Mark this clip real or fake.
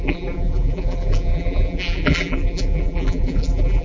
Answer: fake